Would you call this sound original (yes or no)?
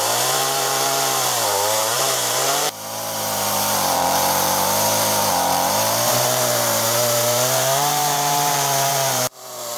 no